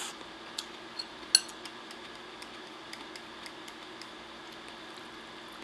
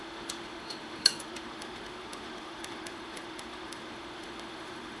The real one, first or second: first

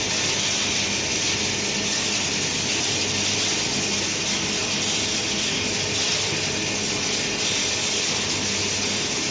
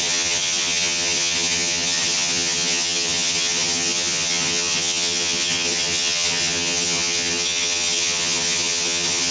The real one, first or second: first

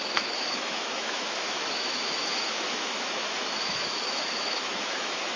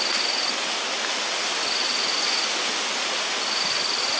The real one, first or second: second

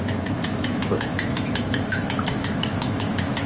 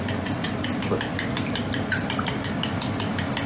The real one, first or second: second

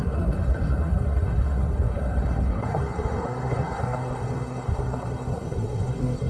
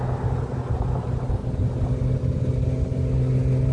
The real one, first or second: second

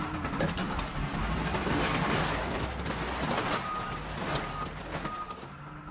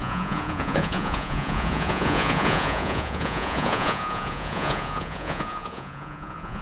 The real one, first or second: first